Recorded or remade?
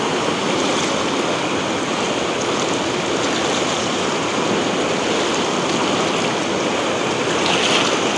recorded